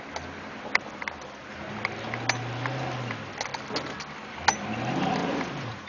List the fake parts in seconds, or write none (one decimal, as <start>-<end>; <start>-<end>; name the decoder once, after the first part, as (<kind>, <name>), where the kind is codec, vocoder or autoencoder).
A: 5.2-5.9 (vocoder, Vocos)